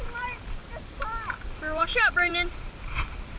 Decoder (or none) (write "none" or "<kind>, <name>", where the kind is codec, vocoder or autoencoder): vocoder, BigVGAN v2